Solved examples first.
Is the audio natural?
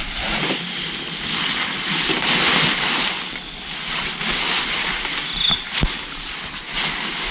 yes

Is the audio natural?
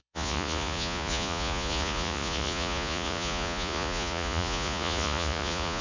no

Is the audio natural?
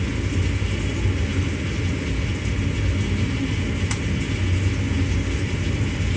yes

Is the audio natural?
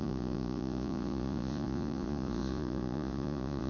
no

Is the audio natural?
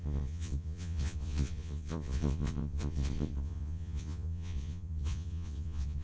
no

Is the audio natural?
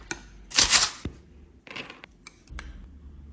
yes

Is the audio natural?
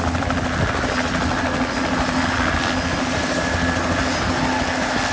yes